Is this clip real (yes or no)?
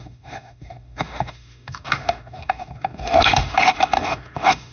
no